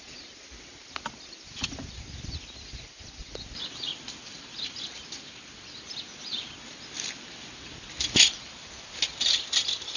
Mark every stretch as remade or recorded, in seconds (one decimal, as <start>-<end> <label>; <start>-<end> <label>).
0.0-10.0 recorded

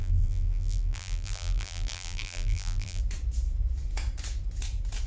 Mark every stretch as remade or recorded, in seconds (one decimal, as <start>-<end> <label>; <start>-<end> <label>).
0.0-3.0 remade; 3.0-5.1 recorded

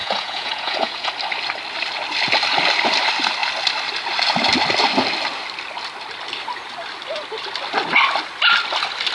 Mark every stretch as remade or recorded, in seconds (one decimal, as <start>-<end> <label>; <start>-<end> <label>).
0.0-1.1 remade; 1.1-9.1 recorded

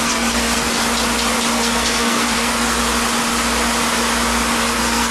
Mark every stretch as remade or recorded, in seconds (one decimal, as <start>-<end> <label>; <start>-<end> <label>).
0.0-0.8 remade; 0.8-1.5 recorded; 1.5-2.8 remade; 2.8-4.6 recorded; 4.6-5.1 remade

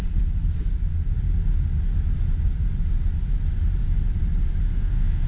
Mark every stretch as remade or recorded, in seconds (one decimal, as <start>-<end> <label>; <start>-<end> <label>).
0.0-4.7 recorded; 4.7-5.3 remade